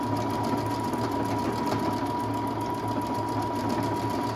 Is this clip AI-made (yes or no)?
no